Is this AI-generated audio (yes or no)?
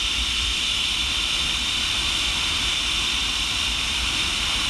yes